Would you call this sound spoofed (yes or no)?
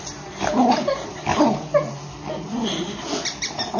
no